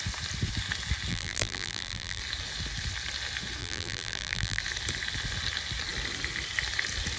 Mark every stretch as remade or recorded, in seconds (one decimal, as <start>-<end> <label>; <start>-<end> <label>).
0.0-1.1 recorded; 1.1-2.2 remade; 2.2-3.6 recorded; 3.6-4.6 remade; 4.6-7.2 recorded